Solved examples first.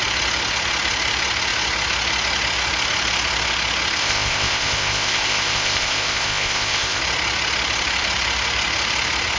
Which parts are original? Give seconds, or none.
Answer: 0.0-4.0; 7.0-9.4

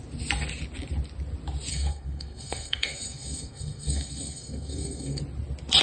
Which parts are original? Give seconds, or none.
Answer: 0.0-1.7; 5.2-5.8

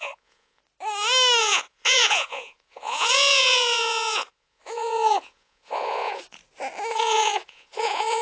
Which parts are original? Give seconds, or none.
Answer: 0.6-1.4; 6.2-6.9

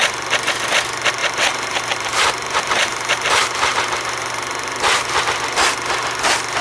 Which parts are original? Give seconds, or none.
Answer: 0.0-1.2; 5.2-6.6

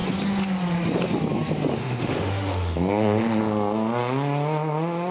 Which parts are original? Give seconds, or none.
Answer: 0.0-1.8; 3.4-5.1

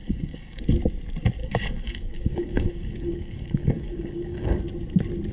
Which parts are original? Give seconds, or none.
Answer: 0.6-1.4; 4.6-5.3